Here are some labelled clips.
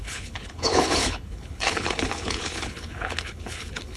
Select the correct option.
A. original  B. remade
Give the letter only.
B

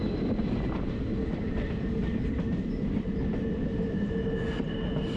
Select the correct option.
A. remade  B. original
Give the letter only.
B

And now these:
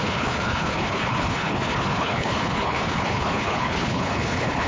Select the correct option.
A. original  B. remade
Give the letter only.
B